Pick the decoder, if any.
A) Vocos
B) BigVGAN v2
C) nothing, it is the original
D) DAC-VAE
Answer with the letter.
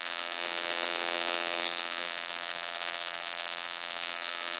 B